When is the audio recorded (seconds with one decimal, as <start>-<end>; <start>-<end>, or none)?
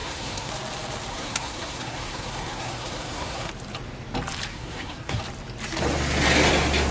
0.5-1.1; 3.5-4.5; 5.2-6.9